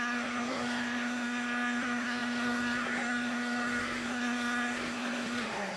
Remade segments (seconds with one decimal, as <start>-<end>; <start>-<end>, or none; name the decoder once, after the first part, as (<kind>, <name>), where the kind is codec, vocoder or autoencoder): 0.0-5.8 (codec, SNAC)